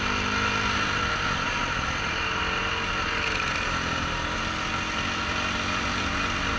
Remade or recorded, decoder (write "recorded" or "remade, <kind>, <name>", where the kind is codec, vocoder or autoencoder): recorded